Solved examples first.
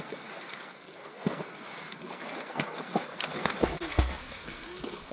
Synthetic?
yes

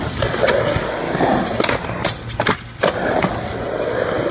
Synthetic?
no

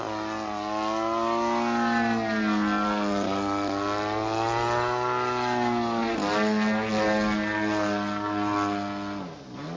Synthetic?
no